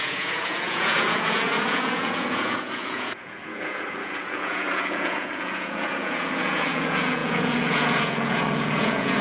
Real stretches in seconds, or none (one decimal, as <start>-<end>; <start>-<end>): none